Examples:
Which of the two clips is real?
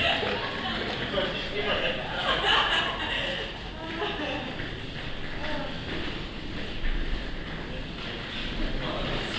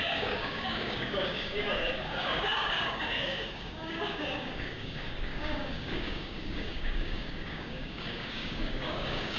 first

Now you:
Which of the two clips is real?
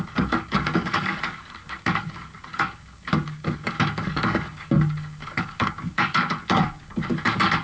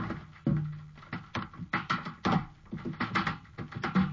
second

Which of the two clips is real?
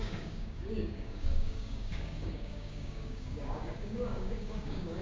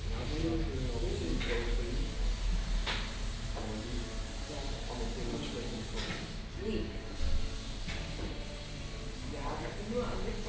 second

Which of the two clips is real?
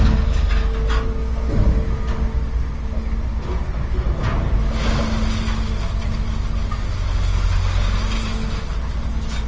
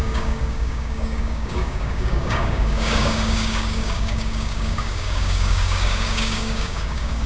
first